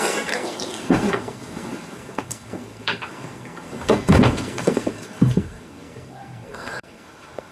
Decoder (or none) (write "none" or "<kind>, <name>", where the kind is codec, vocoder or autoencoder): codec, SNAC